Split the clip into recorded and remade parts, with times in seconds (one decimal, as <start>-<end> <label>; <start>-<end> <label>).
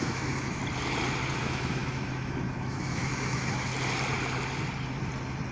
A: 0.0-0.6 remade; 0.6-1.4 recorded; 1.4-3.7 remade; 3.7-5.5 recorded